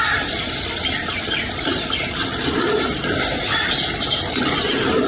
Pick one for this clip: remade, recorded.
remade